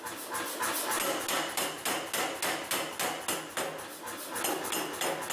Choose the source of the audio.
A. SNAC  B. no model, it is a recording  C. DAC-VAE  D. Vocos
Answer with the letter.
B